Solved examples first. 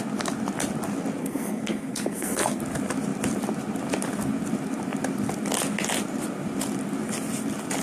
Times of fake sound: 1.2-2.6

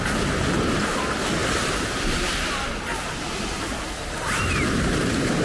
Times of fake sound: none

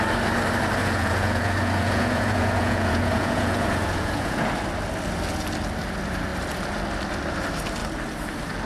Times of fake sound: 0.8-4.5

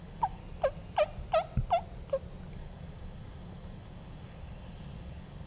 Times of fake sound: 0.0-0.4; 2.5-5.5

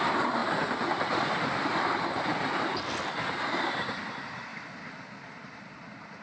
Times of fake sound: none